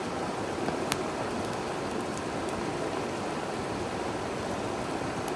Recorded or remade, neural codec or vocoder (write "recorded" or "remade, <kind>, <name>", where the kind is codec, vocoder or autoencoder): recorded